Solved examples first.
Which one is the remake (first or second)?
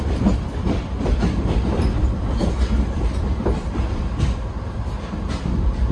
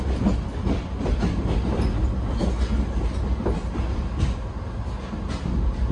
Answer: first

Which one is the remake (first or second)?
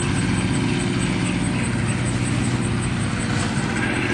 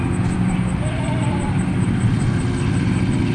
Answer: second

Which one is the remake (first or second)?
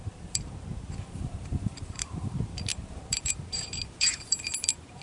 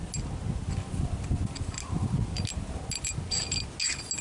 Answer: first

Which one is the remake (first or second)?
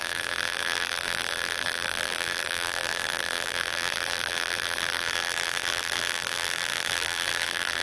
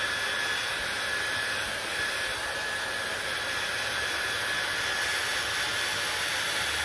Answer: first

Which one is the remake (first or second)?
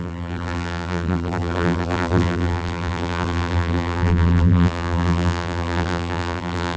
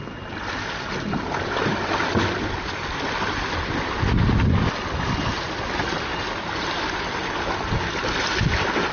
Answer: first